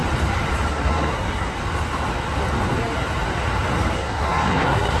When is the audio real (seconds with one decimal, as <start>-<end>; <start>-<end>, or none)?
0.0-0.7; 1.5-3.9